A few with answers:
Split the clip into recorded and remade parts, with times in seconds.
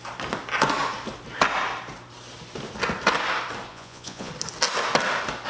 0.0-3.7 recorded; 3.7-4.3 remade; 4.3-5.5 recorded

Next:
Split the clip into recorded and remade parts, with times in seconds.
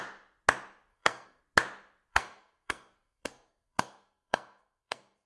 0.0-0.9 recorded; 0.9-1.4 remade; 1.4-2.1 recorded; 2.1-5.3 remade